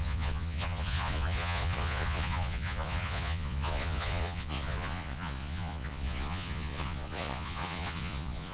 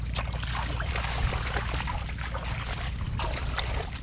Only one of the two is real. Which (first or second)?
second